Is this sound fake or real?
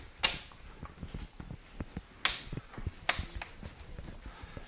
real